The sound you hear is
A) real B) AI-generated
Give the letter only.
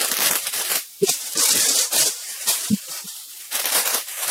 B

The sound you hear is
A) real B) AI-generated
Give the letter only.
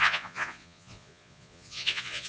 B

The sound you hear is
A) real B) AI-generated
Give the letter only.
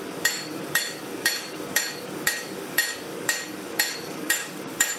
B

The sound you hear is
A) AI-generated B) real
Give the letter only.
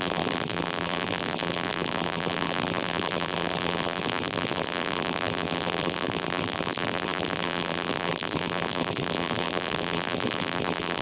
A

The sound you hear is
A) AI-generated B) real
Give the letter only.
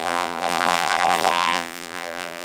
A